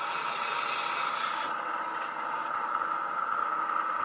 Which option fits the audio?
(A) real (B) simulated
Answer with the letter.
A